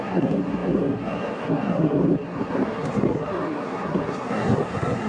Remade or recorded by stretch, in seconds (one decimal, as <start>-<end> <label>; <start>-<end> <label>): 0.0-5.1 remade